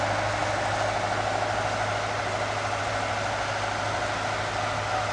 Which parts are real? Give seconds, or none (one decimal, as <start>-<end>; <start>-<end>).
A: 0.0-5.1